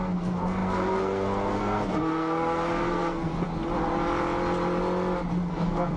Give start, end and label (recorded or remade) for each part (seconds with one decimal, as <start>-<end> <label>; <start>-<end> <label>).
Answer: 0.0-3.3 remade; 3.3-5.5 recorded; 5.5-6.0 remade